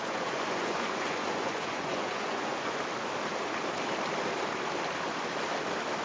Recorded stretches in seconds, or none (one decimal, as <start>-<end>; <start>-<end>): 2.8-6.0